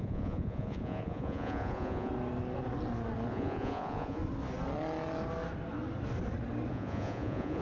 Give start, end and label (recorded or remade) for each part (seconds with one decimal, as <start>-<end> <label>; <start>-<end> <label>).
0.0-2.1 remade; 2.1-3.3 recorded; 3.3-4.2 remade; 4.2-6.7 recorded; 6.7-7.6 remade